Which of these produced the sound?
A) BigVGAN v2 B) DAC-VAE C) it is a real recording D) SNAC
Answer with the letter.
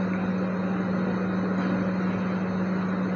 C